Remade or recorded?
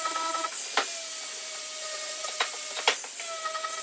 recorded